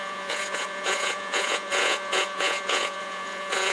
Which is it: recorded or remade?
remade